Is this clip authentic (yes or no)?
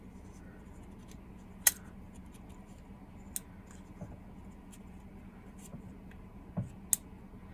yes